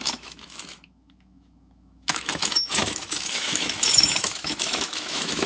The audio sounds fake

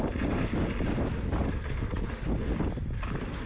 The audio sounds real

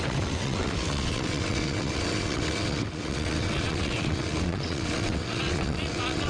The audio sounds fake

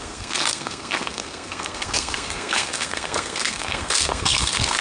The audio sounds fake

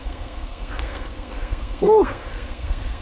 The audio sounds fake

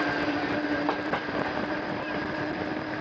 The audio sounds fake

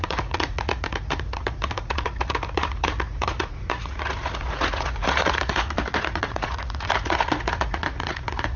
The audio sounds fake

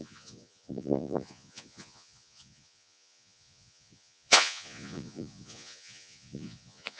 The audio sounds fake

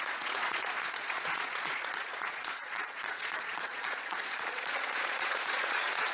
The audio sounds fake